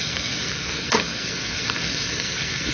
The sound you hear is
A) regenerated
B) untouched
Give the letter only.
A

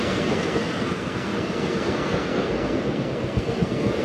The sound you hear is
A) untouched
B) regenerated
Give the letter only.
B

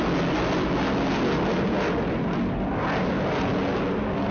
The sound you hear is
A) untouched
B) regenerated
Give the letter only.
A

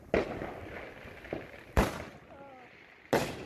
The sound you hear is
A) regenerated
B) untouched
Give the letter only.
B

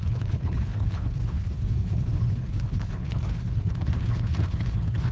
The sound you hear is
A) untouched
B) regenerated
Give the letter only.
B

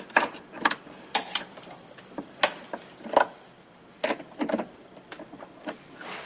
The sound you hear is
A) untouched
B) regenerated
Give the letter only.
A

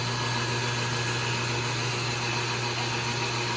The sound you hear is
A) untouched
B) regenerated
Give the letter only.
A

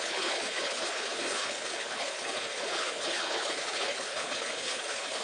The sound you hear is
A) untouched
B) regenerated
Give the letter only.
B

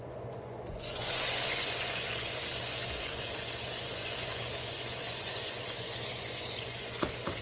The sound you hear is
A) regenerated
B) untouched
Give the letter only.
A